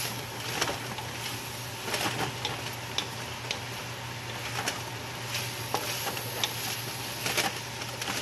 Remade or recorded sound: recorded